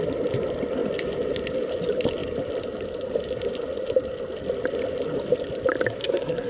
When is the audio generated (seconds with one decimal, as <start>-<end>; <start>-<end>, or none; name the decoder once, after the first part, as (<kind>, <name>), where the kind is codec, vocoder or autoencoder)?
6.0-6.5 (codec, SNAC)